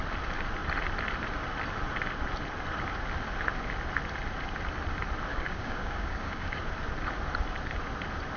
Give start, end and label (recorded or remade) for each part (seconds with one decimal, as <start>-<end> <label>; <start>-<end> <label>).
0.0-5.3 recorded; 5.3-6.6 remade; 6.6-8.4 recorded